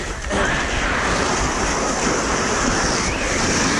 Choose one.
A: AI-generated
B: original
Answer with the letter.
B